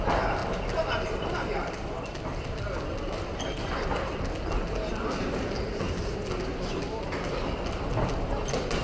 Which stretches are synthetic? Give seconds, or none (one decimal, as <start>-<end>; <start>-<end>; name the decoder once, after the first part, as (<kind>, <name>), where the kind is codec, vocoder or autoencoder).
none